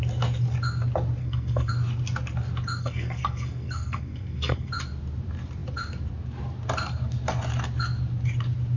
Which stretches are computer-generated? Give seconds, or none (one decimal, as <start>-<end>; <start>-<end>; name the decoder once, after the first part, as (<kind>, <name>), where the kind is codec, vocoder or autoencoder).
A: 1.2-1.7 (codec, SNAC); 2.8-4.7